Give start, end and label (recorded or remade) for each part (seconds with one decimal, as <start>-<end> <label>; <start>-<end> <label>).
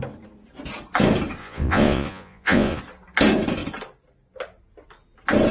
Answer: 0.0-1.4 recorded; 1.4-2.8 remade; 2.8-5.5 recorded